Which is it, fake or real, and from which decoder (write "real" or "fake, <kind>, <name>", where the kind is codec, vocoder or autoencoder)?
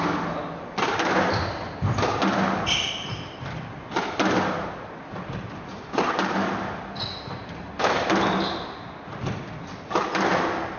real